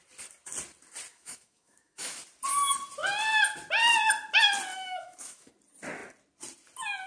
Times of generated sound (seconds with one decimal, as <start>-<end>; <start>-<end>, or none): 1.1-2.2; 4.7-5.5